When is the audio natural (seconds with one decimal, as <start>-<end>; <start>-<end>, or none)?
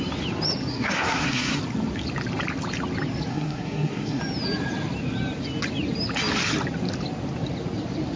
0.0-0.7; 1.6-3.3; 4.2-8.2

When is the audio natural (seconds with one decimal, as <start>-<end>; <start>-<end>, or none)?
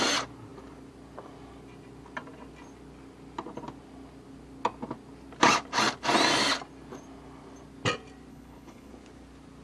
0.0-8.3; 8.9-9.6